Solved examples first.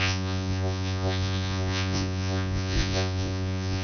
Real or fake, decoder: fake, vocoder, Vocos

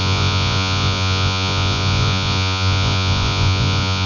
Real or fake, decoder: fake, vocoder, Vocos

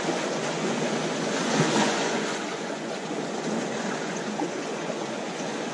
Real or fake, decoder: fake, vocoder, Vocos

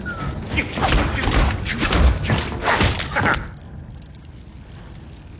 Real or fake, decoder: real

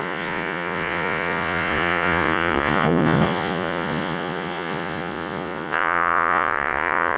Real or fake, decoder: fake, vocoder, Vocos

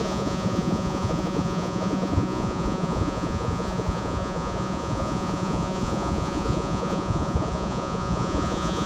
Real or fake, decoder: fake, vocoder, Vocos